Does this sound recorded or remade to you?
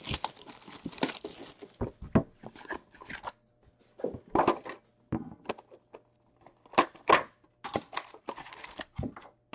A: recorded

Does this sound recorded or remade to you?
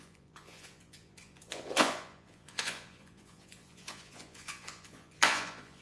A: remade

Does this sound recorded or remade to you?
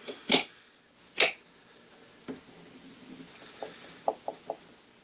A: recorded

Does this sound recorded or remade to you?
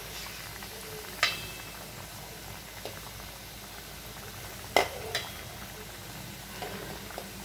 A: recorded